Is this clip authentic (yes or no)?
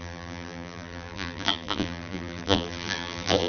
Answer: no